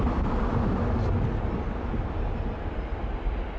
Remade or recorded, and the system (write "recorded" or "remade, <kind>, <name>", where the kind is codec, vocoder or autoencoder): recorded